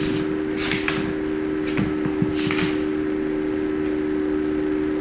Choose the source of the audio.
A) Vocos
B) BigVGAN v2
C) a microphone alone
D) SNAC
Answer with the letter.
C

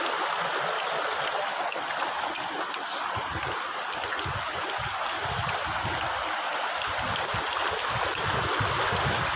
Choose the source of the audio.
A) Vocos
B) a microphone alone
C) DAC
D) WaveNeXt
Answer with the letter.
B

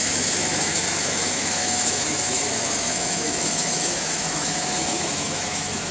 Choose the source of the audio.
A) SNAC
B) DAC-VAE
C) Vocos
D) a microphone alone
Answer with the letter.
B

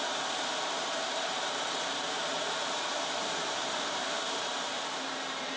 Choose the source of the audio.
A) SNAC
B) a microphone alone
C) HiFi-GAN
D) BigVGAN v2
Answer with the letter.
D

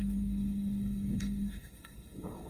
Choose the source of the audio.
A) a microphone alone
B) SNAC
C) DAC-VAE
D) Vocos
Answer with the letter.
B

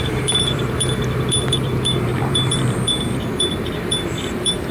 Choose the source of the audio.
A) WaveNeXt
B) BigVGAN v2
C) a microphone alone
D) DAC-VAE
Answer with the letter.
B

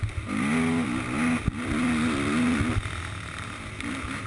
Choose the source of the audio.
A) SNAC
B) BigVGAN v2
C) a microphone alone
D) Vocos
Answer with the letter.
C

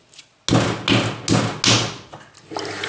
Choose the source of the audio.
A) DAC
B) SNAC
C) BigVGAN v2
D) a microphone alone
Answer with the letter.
D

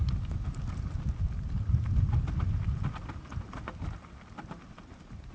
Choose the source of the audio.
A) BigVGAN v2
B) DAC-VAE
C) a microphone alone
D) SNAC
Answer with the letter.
C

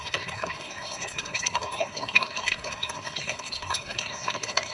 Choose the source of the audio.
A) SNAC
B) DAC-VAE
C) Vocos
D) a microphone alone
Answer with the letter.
A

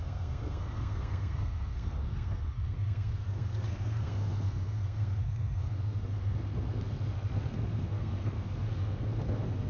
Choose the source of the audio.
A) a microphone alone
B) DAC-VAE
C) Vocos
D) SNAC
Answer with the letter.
D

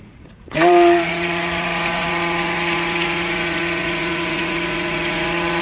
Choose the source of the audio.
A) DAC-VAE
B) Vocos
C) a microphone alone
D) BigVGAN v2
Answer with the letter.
B